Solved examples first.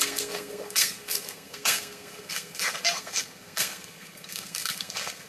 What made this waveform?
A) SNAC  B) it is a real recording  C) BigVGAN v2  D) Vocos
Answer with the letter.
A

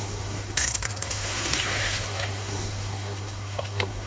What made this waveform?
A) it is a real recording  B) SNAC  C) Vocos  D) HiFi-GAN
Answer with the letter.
B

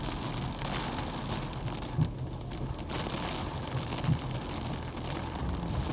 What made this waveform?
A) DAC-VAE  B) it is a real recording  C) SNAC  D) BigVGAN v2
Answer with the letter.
B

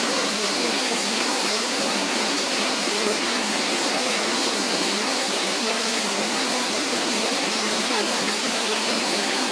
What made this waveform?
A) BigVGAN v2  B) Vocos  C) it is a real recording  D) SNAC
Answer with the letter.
D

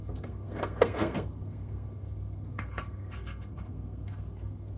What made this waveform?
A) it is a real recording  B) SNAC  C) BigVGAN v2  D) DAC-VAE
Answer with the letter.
B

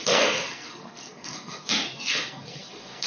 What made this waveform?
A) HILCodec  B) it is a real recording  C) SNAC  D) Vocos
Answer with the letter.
C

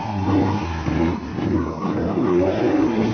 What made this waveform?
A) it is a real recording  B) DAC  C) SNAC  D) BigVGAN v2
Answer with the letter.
C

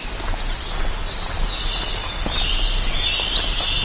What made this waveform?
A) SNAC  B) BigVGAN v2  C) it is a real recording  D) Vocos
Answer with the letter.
C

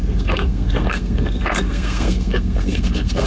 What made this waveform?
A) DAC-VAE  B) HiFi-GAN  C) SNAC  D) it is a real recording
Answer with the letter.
C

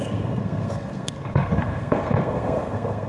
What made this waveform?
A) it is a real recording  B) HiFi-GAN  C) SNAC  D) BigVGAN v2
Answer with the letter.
C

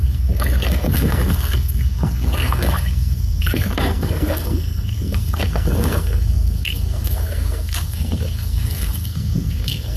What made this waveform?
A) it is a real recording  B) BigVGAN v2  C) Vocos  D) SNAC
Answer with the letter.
D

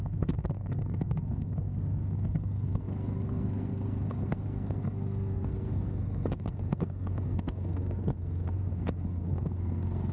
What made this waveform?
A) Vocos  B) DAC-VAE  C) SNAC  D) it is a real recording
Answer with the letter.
C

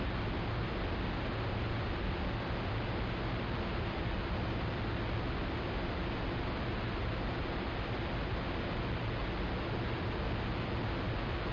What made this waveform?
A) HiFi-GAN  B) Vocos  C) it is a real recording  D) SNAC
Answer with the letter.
C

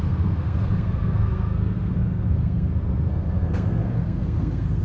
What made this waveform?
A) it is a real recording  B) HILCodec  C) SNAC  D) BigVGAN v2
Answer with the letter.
C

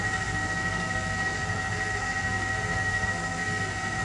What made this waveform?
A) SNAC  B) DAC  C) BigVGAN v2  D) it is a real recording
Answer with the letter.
A